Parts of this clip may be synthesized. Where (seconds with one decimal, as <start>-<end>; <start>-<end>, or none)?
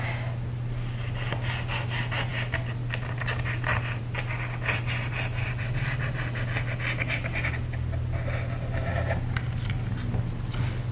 none